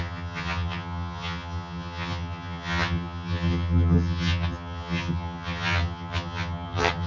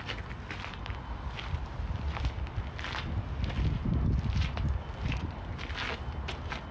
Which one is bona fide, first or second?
second